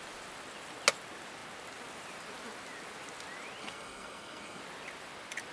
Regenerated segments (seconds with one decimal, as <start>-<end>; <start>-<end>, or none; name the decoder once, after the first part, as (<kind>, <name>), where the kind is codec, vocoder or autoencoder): 3.6-4.6 (codec, SNAC)